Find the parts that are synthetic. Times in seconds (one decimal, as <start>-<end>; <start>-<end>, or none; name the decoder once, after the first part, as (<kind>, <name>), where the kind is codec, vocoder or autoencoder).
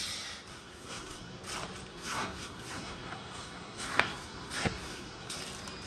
0.5-1.4 (codec, SNAC); 1.9-5.4